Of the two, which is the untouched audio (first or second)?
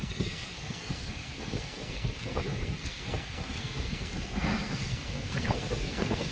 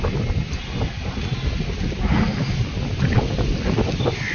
second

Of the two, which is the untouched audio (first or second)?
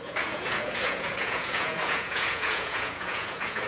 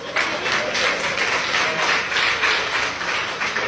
second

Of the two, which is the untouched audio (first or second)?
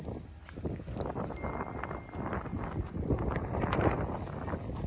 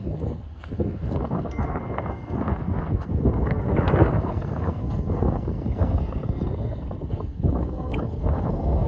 first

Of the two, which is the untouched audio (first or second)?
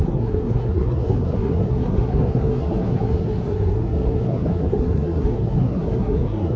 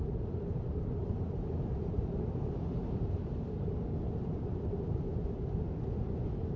second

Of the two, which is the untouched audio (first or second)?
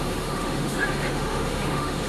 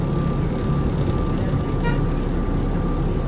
second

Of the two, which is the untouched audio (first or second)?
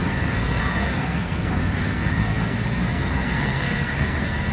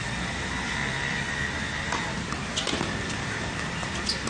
second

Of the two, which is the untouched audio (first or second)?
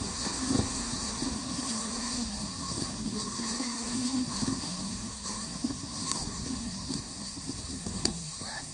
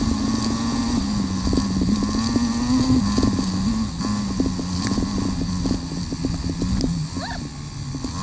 second